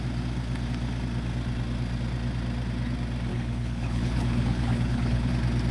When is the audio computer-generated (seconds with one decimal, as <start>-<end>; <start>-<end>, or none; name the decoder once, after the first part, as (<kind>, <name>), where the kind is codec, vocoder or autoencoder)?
3.3-5.3 (codec, HILCodec)